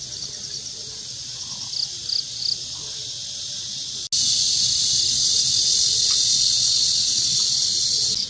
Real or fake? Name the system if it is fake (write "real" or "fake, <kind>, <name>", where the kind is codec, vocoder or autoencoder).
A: real